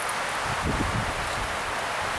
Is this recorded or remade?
recorded